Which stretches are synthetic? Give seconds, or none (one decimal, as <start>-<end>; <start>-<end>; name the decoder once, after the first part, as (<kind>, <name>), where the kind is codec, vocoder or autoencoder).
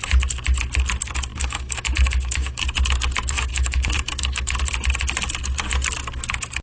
1.3-2.6 (autoencoder, DAC-VAE); 3.5-4.6